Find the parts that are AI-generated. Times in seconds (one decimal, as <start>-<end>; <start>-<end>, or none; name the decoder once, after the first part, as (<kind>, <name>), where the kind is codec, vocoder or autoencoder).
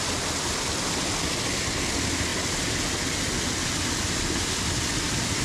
none